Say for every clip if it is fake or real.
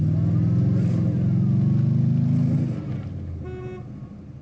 real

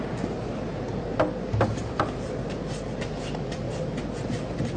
real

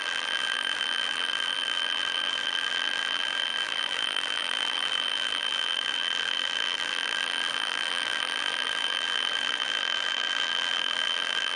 fake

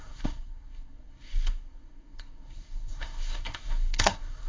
fake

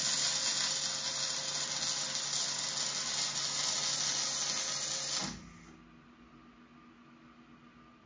real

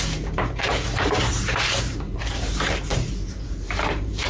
fake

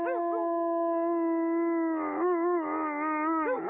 real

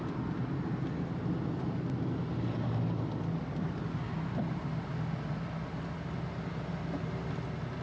real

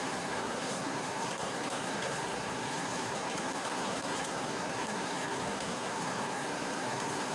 fake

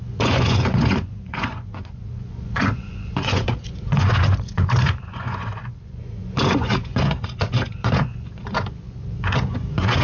fake